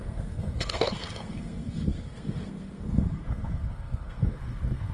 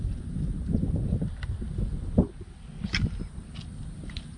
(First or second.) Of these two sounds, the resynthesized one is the first